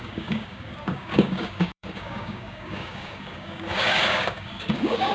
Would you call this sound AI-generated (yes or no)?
yes